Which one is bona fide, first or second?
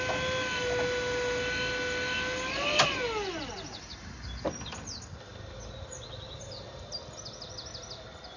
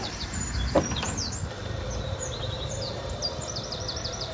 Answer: first